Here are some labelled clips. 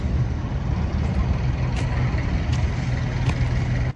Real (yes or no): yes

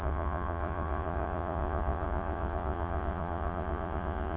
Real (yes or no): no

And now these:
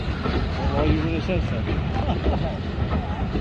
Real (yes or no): yes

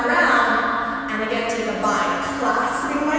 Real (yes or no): no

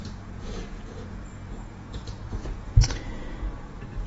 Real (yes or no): no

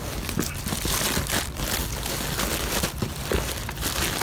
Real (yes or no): yes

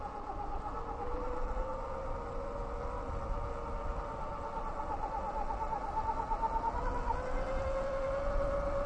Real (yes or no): yes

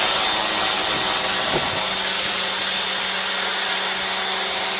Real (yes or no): yes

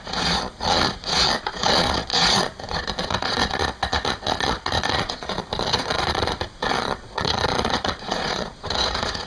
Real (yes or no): no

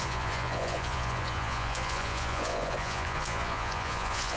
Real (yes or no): no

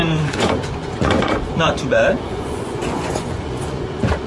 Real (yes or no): no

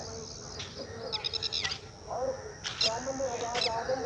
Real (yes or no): yes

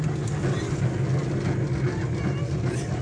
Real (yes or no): yes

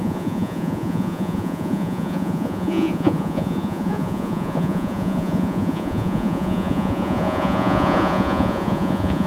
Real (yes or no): no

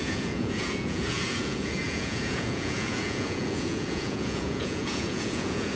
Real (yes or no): no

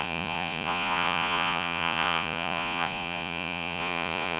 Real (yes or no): no